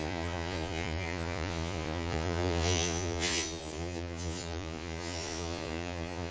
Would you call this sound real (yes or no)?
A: no